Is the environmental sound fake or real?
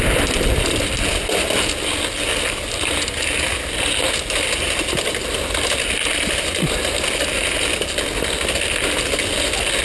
real